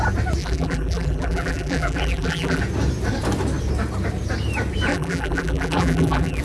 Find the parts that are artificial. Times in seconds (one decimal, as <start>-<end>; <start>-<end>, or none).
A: 0.4-2.6; 4.9-6.4